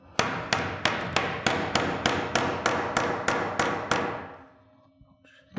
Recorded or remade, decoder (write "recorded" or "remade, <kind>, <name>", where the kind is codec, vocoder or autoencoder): recorded